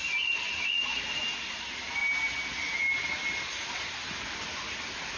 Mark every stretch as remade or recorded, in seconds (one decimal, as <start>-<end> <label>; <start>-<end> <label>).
0.0-5.2 recorded